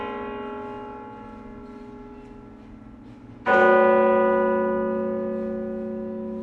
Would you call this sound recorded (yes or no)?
yes